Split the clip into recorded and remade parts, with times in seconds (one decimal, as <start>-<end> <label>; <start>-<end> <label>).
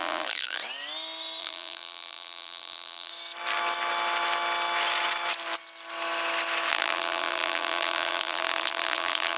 0.0-0.6 remade; 0.6-1.4 recorded; 1.4-3.1 remade; 3.1-6.7 recorded; 6.7-9.4 remade